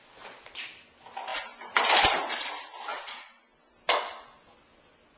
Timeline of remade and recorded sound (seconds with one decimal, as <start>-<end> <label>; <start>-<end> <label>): 0.0-2.9 recorded; 2.9-3.4 remade; 3.4-5.2 recorded